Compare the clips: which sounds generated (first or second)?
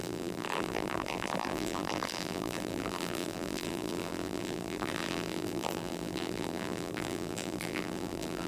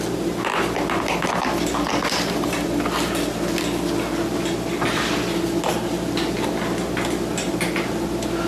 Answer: first